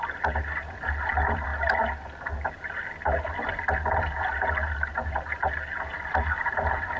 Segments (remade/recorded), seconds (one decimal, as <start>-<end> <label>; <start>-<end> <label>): 0.0-7.0 recorded